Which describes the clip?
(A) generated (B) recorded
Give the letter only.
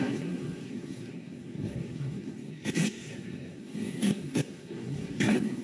A